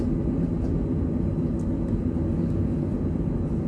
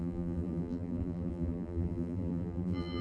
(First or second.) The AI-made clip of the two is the second